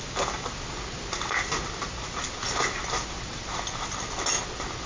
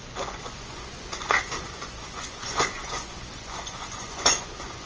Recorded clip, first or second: first